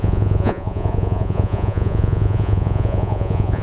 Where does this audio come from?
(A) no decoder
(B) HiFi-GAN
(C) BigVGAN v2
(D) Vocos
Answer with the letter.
D